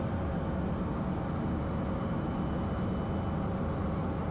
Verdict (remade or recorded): recorded